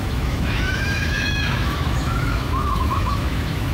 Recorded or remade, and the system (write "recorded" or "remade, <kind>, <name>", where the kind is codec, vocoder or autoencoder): remade, autoencoder, DAC-VAE